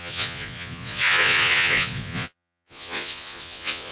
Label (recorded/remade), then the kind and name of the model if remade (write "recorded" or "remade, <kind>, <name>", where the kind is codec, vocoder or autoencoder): remade, vocoder, Vocos